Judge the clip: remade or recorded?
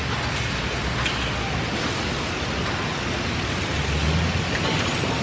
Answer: recorded